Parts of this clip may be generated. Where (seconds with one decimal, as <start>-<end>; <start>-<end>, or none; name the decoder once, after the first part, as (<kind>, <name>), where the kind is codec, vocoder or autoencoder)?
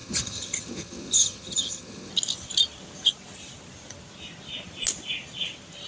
0.0-2.1 (vocoder, HiFi-GAN)